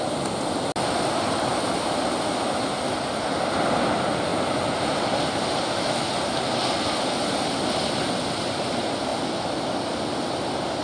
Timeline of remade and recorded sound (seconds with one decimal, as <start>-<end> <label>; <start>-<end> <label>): 0.0-10.8 recorded

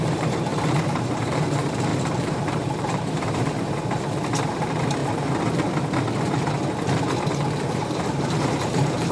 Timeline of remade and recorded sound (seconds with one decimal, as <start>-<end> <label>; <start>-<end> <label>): 0.0-5.0 remade; 5.0-7.7 recorded; 7.7-9.1 remade

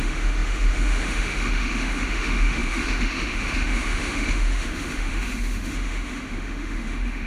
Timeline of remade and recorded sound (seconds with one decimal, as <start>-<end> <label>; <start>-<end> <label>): 0.0-7.3 remade

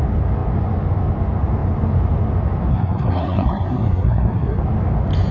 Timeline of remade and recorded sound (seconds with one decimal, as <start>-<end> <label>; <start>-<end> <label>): 0.0-2.7 recorded; 2.7-4.6 remade; 4.6-5.3 recorded

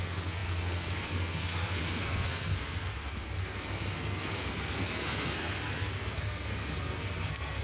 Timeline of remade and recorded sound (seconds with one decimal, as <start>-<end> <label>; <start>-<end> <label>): 0.0-7.6 remade

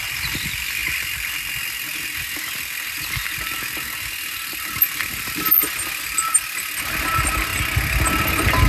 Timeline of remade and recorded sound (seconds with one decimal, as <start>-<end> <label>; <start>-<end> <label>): 0.0-8.7 recorded

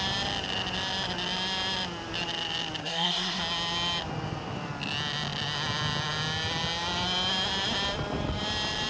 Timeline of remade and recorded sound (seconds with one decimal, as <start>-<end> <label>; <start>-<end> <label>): 0.0-2.8 recorded; 2.8-3.4 remade; 3.4-8.9 recorded

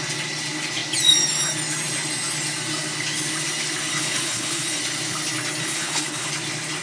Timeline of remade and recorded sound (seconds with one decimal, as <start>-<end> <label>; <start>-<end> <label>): 0.0-3.9 recorded; 3.9-4.8 remade; 4.8-5.6 recorded; 5.6-6.3 remade; 6.3-6.8 recorded